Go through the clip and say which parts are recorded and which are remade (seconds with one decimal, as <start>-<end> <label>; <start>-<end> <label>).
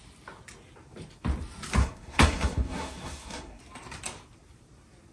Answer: 0.0-1.8 recorded; 1.8-3.6 remade; 3.6-5.1 recorded